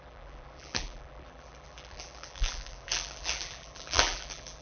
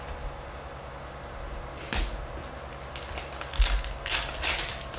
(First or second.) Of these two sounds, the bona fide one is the second